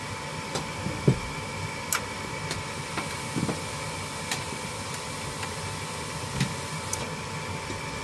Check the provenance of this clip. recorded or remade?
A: recorded